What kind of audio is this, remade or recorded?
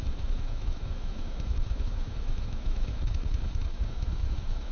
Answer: remade